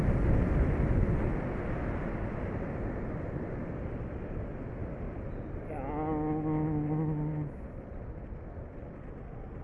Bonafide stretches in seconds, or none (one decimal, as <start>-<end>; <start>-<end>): 0.0-9.6